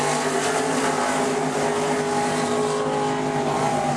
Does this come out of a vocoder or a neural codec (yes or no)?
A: no